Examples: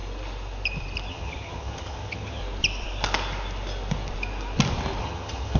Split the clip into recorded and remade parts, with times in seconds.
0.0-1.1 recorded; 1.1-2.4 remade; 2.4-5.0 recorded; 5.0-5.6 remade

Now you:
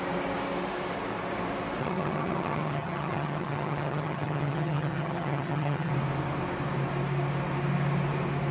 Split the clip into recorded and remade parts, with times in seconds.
0.0-1.8 recorded; 1.8-5.9 remade; 5.9-8.5 recorded

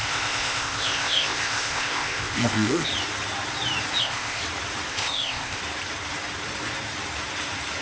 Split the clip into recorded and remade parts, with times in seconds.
0.0-2.9 remade; 2.9-4.0 recorded; 4.0-4.4 remade; 4.4-4.9 recorded; 4.9-5.6 remade; 5.6-7.8 recorded

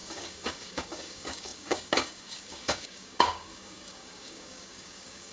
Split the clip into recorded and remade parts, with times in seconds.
0.0-5.3 remade

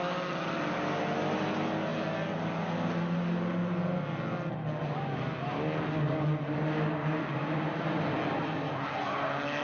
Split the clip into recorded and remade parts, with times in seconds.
0.0-9.6 recorded